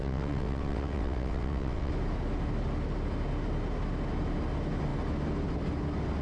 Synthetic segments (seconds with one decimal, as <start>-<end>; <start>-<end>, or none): 0.0-1.9